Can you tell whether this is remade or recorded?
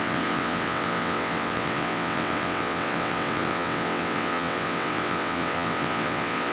remade